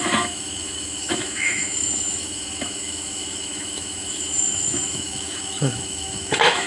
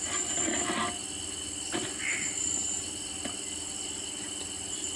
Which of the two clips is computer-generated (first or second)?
first